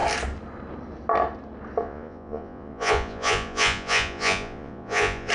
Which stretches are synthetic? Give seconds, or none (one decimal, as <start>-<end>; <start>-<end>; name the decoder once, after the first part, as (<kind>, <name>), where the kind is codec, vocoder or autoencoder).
1.8-5.3 (vocoder, Vocos)